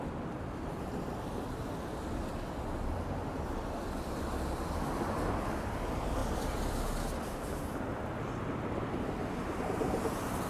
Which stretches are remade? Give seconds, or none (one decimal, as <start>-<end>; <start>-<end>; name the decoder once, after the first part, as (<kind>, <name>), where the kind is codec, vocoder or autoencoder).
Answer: 0.0-10.5 (vocoder, BigVGAN v2)